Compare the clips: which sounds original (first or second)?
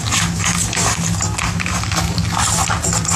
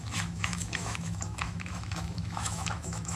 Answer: first